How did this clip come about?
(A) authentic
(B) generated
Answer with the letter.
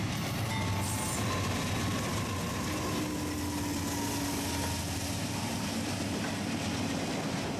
A